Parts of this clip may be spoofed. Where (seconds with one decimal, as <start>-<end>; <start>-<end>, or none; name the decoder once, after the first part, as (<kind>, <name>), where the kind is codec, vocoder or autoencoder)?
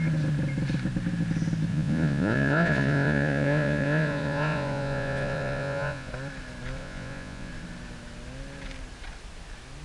1.7-6.1 (vocoder, Vocos); 6.8-7.5